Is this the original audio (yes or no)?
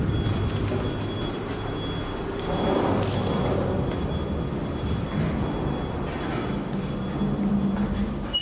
yes